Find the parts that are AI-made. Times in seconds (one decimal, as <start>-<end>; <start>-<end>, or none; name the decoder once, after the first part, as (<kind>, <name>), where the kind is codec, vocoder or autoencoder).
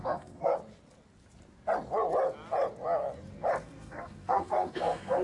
0.0-0.5 (codec, SNAC); 3.6-5.2